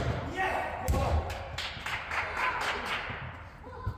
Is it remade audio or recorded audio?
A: recorded